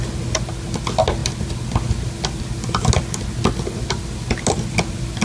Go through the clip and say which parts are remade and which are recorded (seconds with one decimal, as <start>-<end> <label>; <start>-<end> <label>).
0.0-5.2 recorded